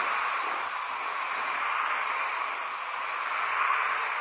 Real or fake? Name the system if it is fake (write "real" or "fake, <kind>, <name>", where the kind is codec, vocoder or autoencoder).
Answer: real